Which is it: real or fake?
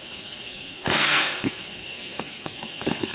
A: fake